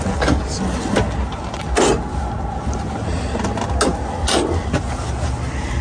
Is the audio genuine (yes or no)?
yes